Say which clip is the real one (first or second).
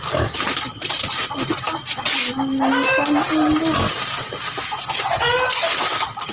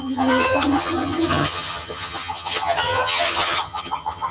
first